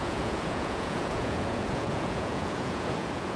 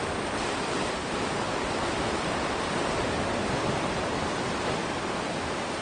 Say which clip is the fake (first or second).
first